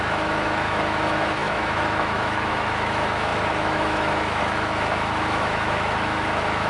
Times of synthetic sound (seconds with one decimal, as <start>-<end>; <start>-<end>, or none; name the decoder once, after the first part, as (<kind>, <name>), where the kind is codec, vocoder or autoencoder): 0.0-6.7 (autoencoder, DAC-VAE)